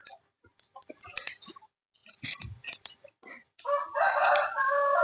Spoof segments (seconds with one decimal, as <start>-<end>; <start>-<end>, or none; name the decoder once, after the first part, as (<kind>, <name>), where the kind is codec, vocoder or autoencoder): none